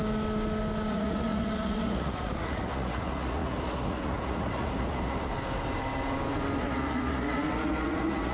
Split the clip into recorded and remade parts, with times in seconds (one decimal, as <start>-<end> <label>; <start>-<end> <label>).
0.0-0.9 recorded; 0.9-5.3 remade; 5.3-6.6 recorded; 6.6-8.3 remade